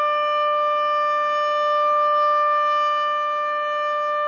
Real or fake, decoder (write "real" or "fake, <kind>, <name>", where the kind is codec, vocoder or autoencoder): real